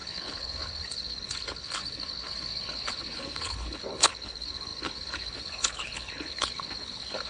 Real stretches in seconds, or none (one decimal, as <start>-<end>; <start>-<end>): none